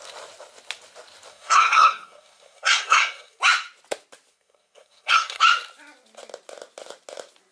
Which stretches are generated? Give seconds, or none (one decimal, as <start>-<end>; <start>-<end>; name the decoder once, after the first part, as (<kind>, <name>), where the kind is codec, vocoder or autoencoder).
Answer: 1.3-3.4 (codec, SNAC); 4.3-5.4